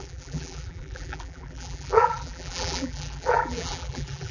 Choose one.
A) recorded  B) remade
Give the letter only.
B